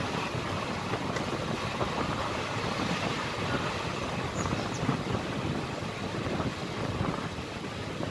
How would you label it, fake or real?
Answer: real